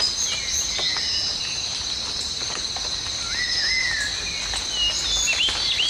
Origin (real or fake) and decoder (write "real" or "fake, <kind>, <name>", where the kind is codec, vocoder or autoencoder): real